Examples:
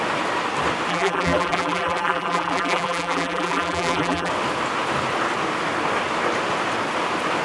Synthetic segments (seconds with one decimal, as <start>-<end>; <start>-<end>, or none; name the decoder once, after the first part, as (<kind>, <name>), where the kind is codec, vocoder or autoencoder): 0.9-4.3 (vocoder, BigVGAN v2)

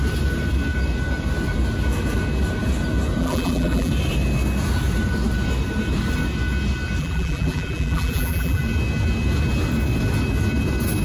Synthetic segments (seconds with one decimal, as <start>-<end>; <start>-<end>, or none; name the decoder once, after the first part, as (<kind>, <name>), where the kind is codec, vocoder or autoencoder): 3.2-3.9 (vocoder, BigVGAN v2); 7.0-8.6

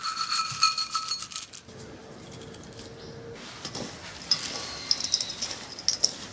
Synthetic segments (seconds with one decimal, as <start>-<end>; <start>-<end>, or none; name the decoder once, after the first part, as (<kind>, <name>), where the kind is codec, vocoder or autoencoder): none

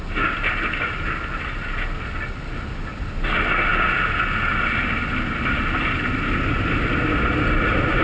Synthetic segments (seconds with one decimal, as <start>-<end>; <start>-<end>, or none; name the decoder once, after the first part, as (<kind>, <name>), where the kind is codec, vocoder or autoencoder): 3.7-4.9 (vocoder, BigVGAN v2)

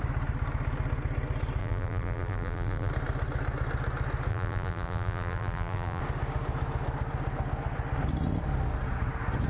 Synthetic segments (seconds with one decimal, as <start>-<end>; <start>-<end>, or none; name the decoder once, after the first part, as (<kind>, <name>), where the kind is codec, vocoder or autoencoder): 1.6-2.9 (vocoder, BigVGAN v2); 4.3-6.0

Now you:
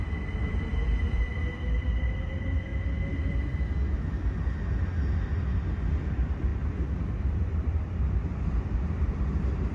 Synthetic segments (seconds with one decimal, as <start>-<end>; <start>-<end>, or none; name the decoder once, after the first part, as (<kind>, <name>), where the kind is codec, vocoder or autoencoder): 0.0-2.7 (vocoder, BigVGAN v2); 3.3-6.5; 7.2-9.7